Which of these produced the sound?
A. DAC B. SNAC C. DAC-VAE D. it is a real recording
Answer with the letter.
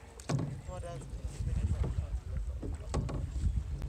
D